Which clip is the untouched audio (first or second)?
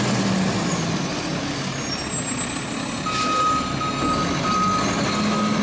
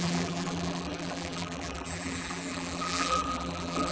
first